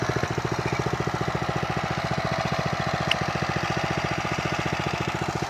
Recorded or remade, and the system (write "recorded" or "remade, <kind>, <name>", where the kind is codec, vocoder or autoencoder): recorded